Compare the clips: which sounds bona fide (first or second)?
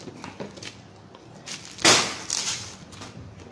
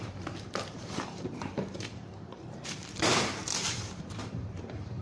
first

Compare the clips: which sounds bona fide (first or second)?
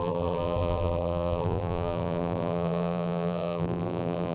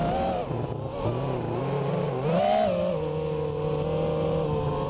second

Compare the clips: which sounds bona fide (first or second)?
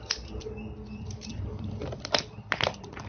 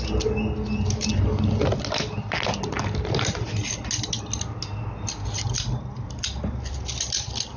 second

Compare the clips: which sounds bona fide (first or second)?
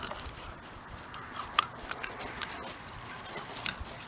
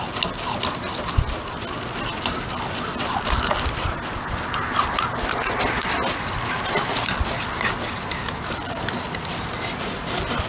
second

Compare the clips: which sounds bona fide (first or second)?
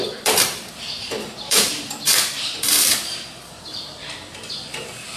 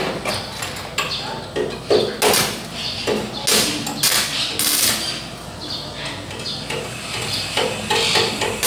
second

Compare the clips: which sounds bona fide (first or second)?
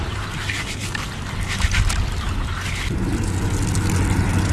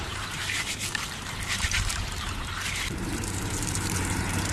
first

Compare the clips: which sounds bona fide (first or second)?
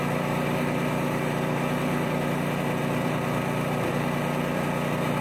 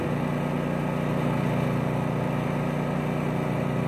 second